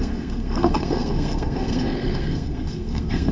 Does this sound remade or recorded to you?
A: remade